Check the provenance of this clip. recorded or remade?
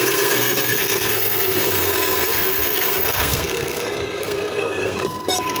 remade